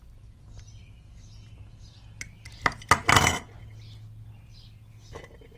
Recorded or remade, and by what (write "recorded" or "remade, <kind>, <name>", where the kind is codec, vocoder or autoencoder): recorded